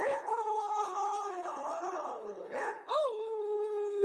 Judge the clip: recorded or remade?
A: remade